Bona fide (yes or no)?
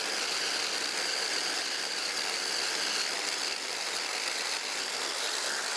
yes